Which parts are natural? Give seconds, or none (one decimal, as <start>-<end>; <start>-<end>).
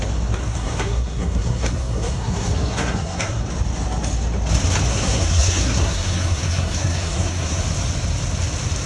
0.0-0.4; 3.4-4.9; 7.6-8.9